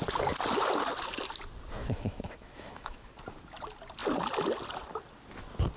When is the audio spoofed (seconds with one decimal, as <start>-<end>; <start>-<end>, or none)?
1.8-3.1